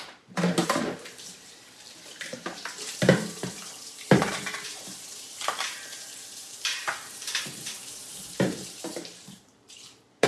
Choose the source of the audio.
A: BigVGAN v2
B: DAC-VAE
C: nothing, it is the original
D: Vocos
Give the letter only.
A